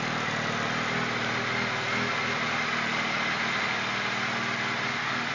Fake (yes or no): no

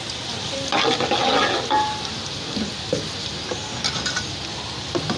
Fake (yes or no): no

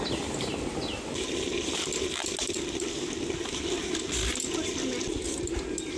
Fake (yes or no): no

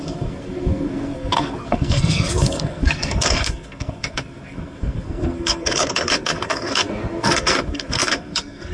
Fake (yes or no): yes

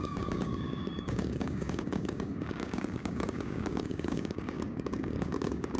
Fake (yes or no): yes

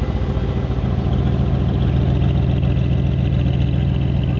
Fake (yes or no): no